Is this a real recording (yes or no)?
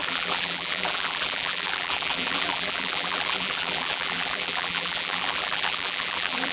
no